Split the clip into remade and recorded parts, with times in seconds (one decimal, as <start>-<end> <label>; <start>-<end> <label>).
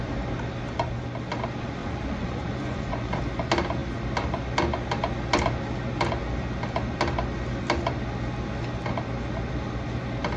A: 0.0-1.8 recorded; 1.8-3.2 remade; 3.2-10.4 recorded